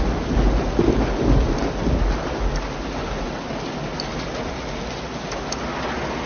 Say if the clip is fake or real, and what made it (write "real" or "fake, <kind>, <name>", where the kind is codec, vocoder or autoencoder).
real